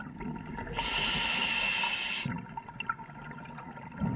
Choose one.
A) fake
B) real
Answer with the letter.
B